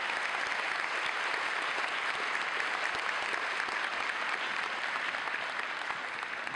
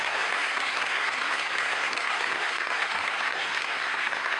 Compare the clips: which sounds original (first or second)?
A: first